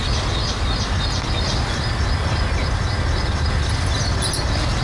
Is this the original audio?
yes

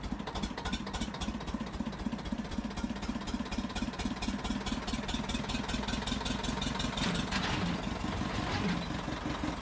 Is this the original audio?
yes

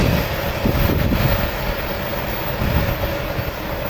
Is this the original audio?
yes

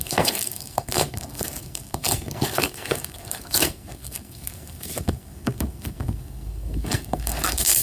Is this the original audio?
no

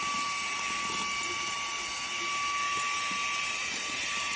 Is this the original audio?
yes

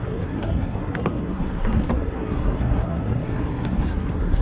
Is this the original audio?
no